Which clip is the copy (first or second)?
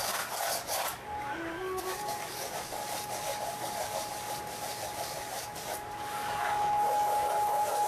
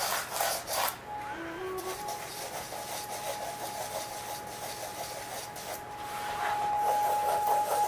first